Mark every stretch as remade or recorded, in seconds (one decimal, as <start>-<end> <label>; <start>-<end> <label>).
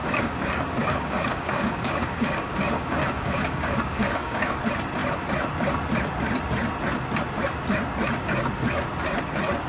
0.0-4.6 remade; 4.6-9.7 recorded